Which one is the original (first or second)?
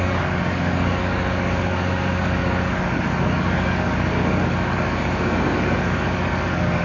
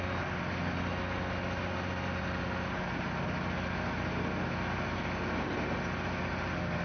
second